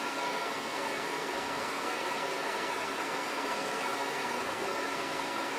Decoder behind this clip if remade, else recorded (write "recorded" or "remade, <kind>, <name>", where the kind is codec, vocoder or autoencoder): remade, codec, SNAC